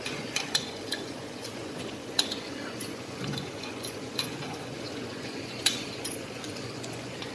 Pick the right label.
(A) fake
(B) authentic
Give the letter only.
A